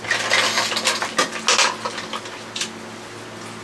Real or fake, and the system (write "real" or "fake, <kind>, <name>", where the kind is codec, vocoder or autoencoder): real